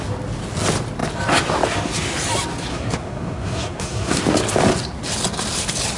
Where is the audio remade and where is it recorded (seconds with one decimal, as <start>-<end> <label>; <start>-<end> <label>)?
0.0-2.7 recorded; 2.7-4.2 remade; 4.2-6.0 recorded

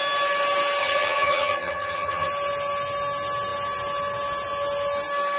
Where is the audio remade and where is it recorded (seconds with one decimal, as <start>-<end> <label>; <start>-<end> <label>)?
0.0-0.8 recorded; 0.8-2.3 remade; 2.3-5.4 recorded

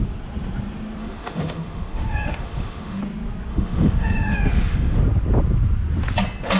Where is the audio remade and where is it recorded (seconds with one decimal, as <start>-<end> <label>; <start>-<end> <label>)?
0.0-1.0 recorded; 1.0-3.0 remade; 3.0-3.5 recorded; 3.5-5.0 remade; 5.0-6.6 recorded

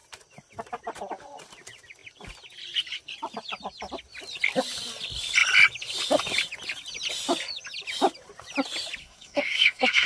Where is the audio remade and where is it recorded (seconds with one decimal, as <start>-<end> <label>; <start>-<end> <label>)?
0.0-9.0 recorded; 9.0-10.1 remade

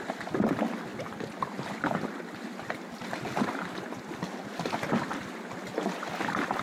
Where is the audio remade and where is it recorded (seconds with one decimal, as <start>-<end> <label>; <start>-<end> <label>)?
0.0-6.6 recorded

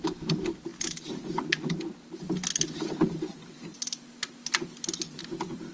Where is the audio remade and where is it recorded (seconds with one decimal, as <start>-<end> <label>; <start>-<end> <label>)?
0.0-5.7 recorded